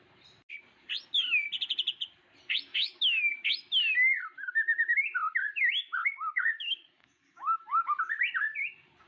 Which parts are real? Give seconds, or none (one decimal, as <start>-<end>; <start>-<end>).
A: 0.0-2.7; 3.3-6.0; 8.0-9.1